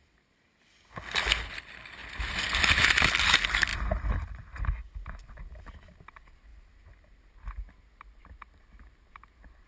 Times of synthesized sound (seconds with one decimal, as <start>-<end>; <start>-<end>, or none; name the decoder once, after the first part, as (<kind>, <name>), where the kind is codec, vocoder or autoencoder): 3.7-4.4 (vocoder, BigVGAN v2)